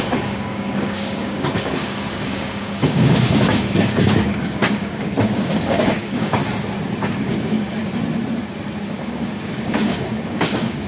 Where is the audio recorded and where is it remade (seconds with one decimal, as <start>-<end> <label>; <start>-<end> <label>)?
0.0-6.4 remade; 6.4-7.1 recorded; 7.1-7.8 remade; 7.8-8.9 recorded; 8.9-10.9 remade